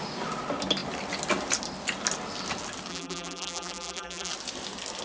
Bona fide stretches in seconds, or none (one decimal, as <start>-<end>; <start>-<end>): 0.0-2.9; 4.3-5.0